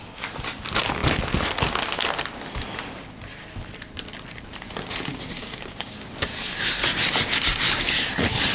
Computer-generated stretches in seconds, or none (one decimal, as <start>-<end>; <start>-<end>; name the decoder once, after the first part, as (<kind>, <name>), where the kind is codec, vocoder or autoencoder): 5.4-6.1 (codec, DAC)